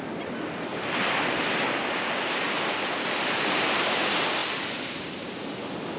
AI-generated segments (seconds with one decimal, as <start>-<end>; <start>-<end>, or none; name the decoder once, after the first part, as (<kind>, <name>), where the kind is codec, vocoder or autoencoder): none